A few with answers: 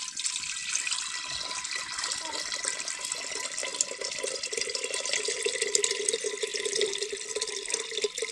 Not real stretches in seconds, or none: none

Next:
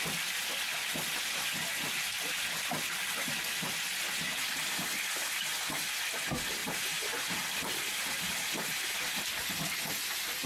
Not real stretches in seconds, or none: 6.6-9.3 (vocoder, BigVGAN v2)